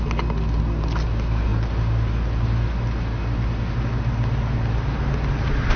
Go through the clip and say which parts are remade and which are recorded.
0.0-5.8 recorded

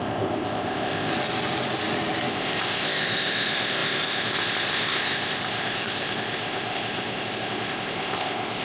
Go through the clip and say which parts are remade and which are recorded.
0.0-1.1 remade; 1.1-2.3 recorded; 2.3-8.6 remade

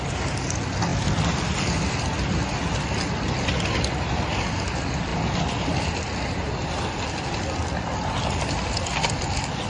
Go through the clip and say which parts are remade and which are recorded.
0.0-9.7 recorded

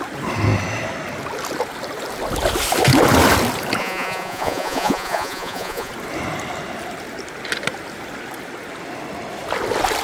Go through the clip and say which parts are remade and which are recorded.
0.0-3.8 recorded; 3.8-5.9 remade; 5.9-10.0 recorded

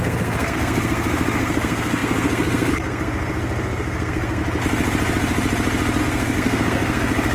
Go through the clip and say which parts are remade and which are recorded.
0.0-4.4 remade; 4.4-6.0 recorded; 6.0-7.3 remade

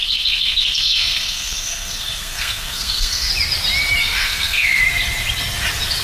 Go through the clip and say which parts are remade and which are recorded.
0.0-3.3 remade; 3.3-4.0 recorded; 4.0-4.8 remade; 4.8-6.0 recorded

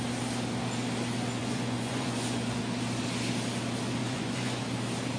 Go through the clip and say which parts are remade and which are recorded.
0.0-1.4 recorded; 1.4-2.6 remade; 2.6-4.0 recorded; 4.0-4.6 remade; 4.6-5.2 recorded